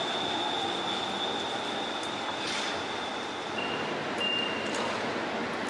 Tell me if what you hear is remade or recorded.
recorded